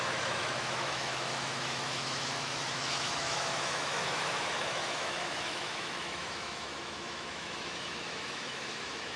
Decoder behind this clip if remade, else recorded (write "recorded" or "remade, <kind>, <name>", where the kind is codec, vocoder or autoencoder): remade, autoencoder, DAC-VAE